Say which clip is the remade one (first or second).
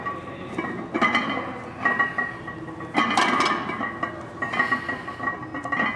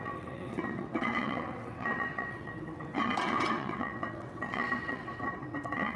second